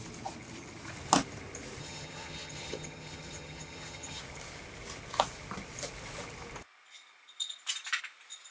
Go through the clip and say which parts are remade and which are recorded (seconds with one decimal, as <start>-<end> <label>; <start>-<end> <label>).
0.0-1.8 recorded; 1.8-4.2 remade; 4.2-8.5 recorded